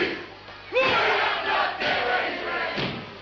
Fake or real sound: real